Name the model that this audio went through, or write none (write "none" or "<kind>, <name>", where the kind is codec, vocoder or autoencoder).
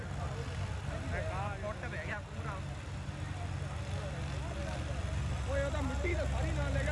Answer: none